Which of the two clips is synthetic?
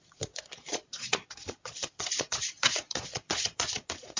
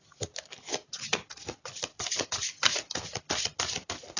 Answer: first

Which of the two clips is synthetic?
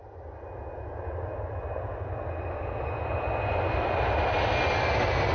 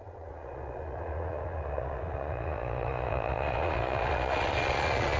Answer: second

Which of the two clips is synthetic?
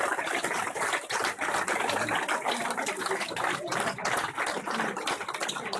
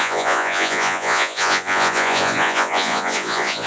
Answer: second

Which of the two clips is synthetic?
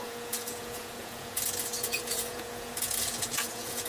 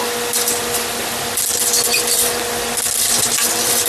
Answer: first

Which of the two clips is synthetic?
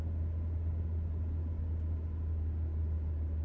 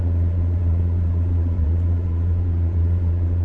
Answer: second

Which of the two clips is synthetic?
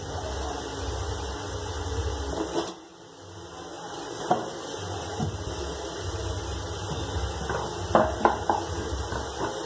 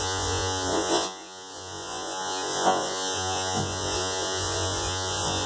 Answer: second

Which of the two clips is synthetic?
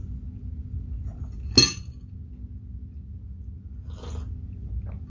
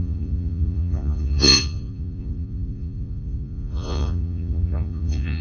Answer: second